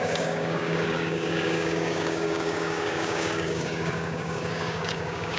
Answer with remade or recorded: remade